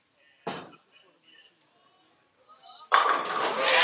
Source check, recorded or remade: recorded